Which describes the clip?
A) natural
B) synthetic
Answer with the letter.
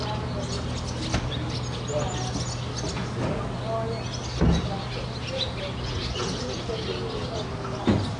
A